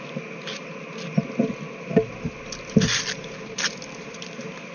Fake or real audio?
real